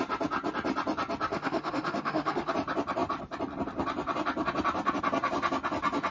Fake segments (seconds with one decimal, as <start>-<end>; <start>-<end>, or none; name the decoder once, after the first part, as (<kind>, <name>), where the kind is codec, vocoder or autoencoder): 1.3-2.5 (autoencoder, DAC-VAE)